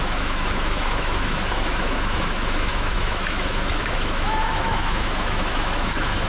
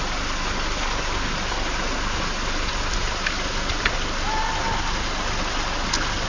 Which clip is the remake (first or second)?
first